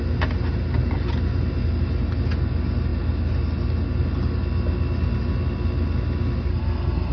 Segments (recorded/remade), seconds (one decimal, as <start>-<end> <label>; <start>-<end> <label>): 0.0-6.5 recorded; 6.5-7.1 remade